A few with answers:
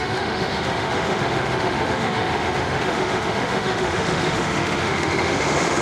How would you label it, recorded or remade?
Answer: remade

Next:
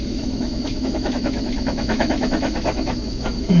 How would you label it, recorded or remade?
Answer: remade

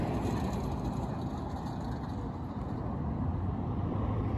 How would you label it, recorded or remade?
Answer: recorded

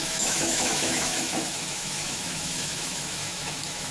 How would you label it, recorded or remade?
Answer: remade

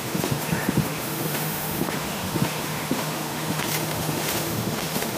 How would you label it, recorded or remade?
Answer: remade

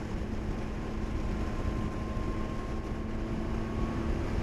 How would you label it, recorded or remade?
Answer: recorded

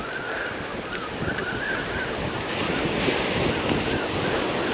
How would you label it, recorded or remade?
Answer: recorded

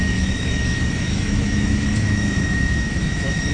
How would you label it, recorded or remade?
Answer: remade